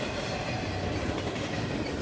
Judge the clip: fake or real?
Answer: fake